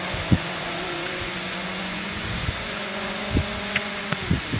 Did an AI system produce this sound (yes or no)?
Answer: yes